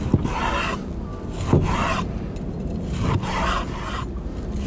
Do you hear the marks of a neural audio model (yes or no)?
no